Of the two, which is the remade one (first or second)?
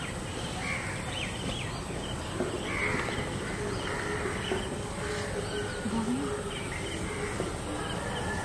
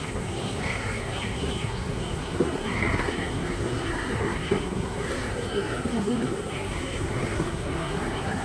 second